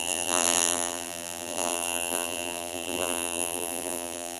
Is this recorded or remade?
remade